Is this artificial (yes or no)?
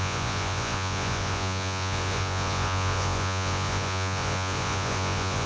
yes